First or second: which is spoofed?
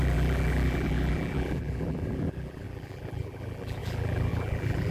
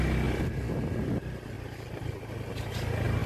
first